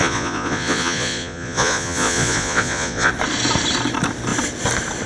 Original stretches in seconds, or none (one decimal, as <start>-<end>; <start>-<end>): 3.1-5.1